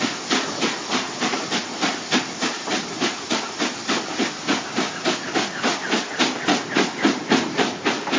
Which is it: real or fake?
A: real